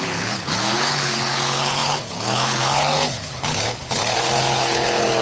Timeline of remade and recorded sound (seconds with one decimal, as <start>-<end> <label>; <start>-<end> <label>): 0.0-5.2 remade